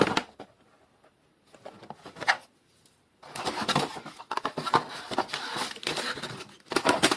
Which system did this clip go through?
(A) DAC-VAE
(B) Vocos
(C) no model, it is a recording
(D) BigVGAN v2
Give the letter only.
C